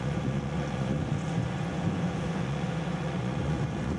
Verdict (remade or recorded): remade